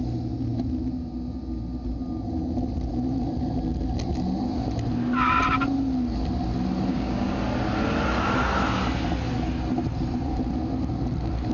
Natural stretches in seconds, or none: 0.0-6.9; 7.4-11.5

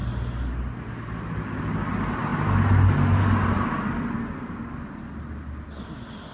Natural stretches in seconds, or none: 0.0-6.3